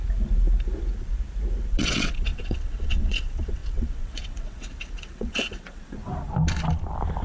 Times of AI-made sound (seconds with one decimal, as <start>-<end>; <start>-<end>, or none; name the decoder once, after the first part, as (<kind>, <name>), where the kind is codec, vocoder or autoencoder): 1.7-6.0 (vocoder, WaveNeXt)